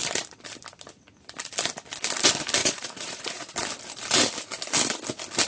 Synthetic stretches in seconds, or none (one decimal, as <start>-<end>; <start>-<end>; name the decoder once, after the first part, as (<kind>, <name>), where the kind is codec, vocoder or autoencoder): 2.6-3.5 (vocoder, Vocos)

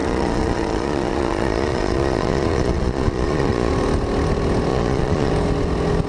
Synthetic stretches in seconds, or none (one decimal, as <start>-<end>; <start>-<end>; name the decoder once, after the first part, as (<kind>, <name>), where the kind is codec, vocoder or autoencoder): 0.0-3.7 (vocoder, Vocos); 4.7-5.3